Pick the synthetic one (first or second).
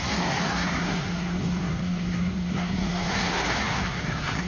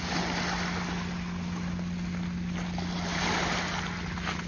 first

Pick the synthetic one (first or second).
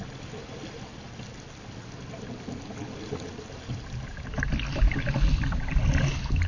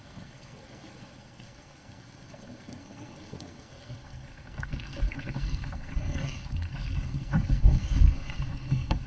second